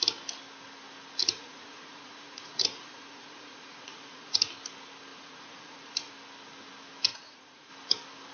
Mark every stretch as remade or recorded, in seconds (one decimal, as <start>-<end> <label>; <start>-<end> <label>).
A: 0.0-1.2 recorded; 1.2-4.5 remade; 4.5-5.1 recorded; 5.1-6.1 remade; 6.1-7.1 recorded; 7.1-7.7 remade; 7.7-8.3 recorded